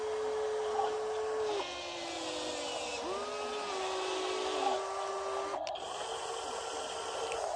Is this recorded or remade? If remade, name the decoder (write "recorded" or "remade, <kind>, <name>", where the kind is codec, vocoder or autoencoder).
recorded